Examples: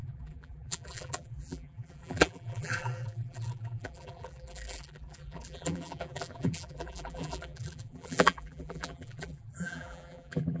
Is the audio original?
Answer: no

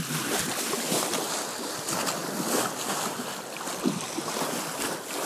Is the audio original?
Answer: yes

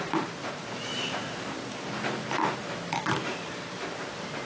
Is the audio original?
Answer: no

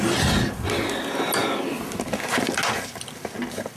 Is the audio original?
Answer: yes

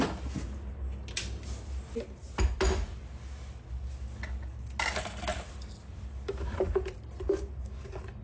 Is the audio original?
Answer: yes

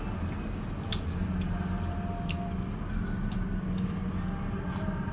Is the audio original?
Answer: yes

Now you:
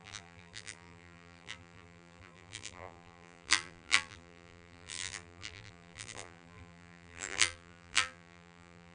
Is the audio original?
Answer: no